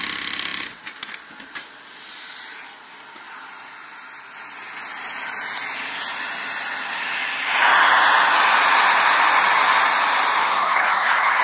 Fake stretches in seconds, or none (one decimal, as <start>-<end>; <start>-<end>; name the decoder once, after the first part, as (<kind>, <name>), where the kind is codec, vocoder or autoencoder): 10.4-11.4 (codec, SNAC)